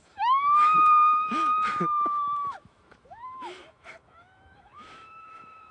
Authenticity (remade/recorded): remade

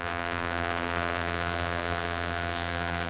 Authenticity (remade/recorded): remade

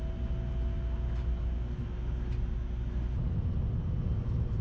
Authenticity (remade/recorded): recorded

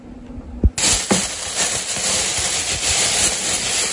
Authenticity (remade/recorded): recorded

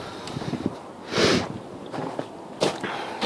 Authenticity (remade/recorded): recorded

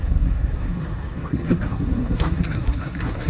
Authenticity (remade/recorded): remade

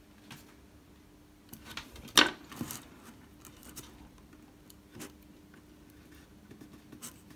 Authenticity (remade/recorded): recorded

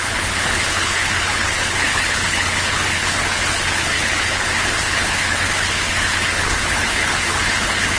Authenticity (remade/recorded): remade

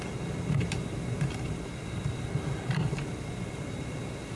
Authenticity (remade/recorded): recorded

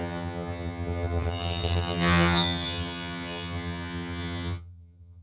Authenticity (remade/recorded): remade